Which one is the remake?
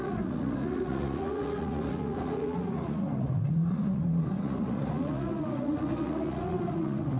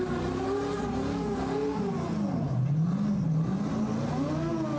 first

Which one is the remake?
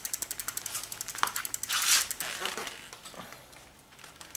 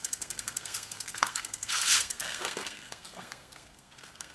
second